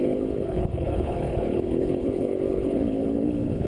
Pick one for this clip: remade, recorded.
remade